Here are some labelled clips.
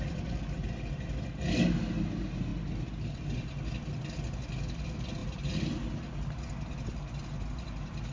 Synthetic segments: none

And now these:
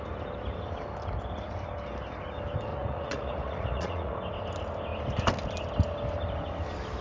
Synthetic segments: 2.7-4.2 (vocoder, Vocos)

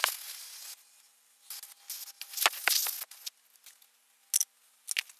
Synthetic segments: none

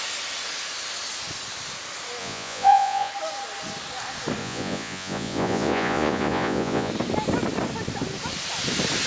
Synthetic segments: 2.2-3.1 (vocoder, Vocos); 4.4-6.9